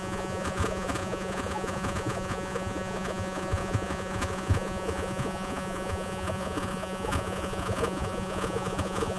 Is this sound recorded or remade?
remade